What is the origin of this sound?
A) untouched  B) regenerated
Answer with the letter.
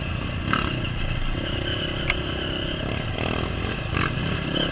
A